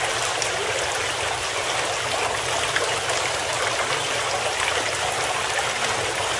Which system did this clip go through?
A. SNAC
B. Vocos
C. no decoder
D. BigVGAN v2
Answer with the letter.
C